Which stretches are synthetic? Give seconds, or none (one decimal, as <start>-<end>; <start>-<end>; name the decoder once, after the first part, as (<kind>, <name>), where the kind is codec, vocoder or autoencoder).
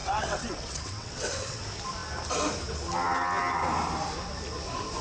0.0-1.6 (vocoder, WaveNeXt)